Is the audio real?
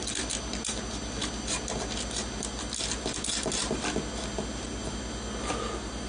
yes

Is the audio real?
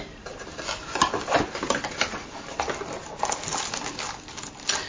yes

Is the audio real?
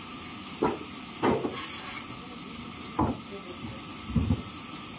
yes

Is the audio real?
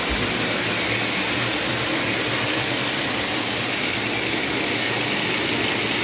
yes